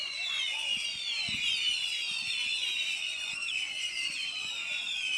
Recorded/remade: remade